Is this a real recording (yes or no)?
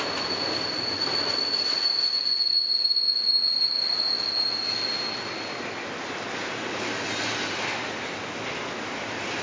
yes